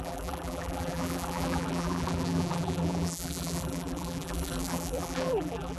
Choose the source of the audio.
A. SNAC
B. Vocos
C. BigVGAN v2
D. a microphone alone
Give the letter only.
C